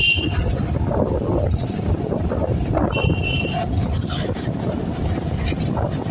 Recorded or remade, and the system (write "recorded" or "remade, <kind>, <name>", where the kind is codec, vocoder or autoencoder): recorded